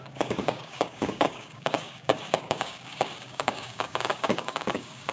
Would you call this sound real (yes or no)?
no